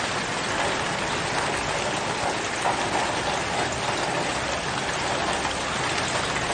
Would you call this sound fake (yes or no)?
no